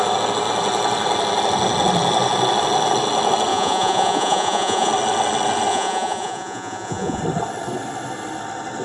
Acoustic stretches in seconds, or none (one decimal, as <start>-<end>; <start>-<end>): 0.0-3.5; 4.9-5.7; 7.2-8.8